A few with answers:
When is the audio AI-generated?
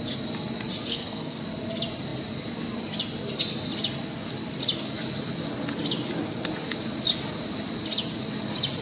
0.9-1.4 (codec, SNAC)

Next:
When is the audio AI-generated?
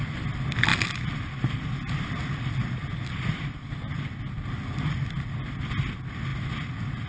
none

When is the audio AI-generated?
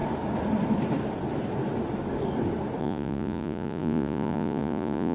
2.8-5.1 (vocoder, Vocos)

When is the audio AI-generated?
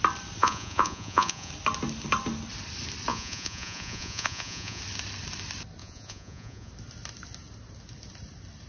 0.4-1.5 (vocoder, Vocos); 3.1-4.8; 5.8-6.7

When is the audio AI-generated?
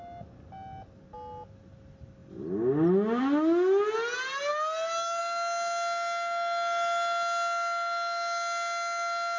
none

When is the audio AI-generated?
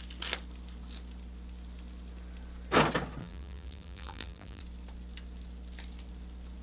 3.2-4.6 (vocoder, BigVGAN v2)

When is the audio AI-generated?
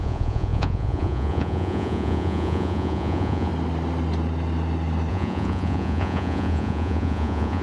0.0-3.5 (vocoder, Vocos); 5.1-7.6